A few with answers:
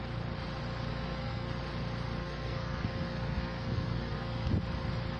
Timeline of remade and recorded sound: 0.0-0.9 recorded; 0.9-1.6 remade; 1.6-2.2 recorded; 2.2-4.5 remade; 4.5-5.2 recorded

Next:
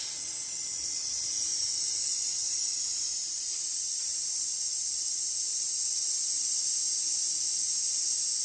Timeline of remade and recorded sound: 0.0-1.5 recorded; 1.5-4.3 remade; 4.3-5.5 recorded; 5.5-6.4 remade; 6.4-8.4 recorded

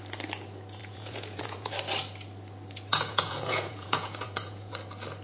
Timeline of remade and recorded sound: 0.0-0.8 recorded; 0.8-1.7 remade; 1.7-2.9 recorded; 2.9-4.7 remade; 4.7-5.2 recorded

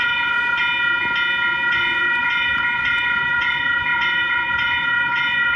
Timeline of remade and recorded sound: 0.0-0.6 remade; 0.6-1.7 recorded; 1.7-5.6 remade

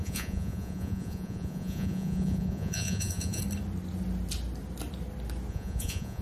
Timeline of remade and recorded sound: 0.0-3.4 remade; 3.4-5.5 recorded; 5.5-6.2 remade